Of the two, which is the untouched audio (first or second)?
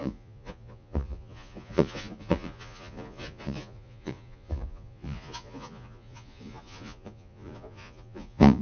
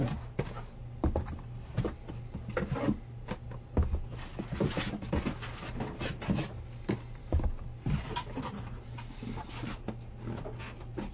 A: second